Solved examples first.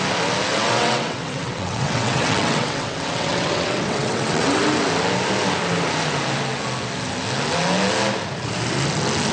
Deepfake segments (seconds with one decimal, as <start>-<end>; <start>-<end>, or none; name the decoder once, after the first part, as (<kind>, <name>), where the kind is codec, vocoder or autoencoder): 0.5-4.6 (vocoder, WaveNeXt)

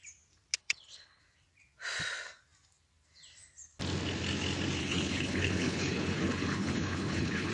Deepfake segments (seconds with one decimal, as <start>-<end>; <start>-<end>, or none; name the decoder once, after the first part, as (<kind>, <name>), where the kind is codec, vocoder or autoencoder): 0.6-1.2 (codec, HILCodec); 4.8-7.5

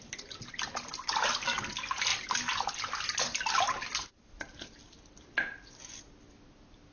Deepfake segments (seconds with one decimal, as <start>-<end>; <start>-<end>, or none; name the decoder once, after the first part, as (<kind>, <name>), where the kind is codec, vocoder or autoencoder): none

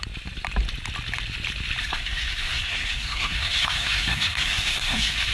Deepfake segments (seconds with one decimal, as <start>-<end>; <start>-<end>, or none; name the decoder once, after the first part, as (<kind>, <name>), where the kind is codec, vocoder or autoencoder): 1.8-5.3 (codec, SNAC)

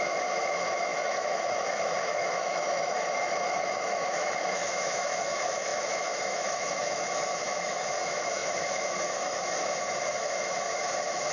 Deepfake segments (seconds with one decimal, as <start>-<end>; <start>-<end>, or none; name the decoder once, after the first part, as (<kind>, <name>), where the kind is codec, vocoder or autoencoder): 0.0-11.3 (autoencoder, DAC-VAE)